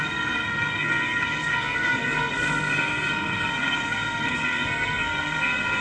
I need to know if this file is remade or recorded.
remade